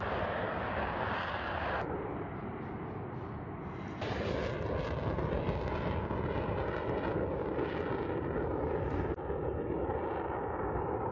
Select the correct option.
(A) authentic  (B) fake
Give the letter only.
A